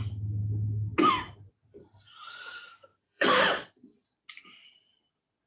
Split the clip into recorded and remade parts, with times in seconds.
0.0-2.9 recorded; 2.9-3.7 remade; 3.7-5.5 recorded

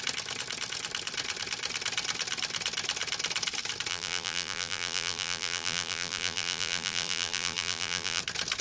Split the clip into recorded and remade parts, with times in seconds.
0.0-3.9 recorded; 3.9-8.2 remade; 8.2-8.6 recorded

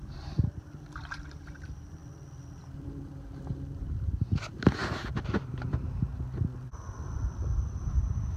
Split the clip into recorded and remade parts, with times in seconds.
0.0-2.0 remade; 2.0-2.6 recorded; 2.6-6.1 remade; 6.1-7.7 recorded; 7.7-8.4 remade

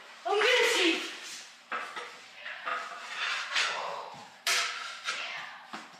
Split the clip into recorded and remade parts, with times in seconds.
0.0-4.2 recorded; 4.2-5.6 remade; 5.6-6.0 recorded

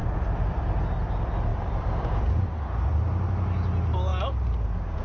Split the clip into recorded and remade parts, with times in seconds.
0.0-0.8 remade; 0.8-1.5 recorded; 1.5-2.9 remade; 2.9-5.0 recorded